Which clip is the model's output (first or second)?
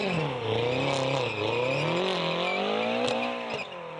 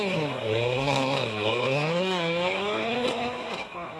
second